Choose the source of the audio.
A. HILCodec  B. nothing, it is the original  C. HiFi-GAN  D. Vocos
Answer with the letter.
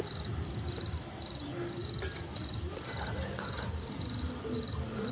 B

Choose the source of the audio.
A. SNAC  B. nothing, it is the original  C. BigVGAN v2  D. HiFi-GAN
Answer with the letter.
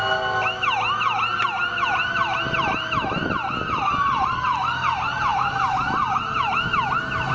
B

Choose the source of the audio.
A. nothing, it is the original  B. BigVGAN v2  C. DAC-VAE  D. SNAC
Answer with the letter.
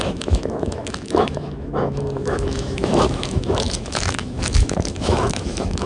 C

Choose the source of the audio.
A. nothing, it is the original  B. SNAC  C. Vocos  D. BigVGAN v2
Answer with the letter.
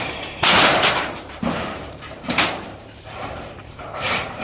D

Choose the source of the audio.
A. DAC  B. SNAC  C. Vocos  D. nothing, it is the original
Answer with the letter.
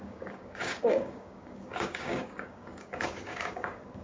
A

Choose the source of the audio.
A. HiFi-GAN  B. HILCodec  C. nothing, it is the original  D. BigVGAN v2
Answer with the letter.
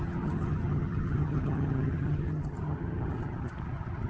A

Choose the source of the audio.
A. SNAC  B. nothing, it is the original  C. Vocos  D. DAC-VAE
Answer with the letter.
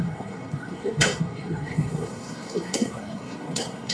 A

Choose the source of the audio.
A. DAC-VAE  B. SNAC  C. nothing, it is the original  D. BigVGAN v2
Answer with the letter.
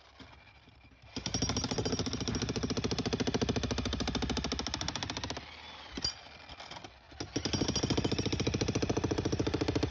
C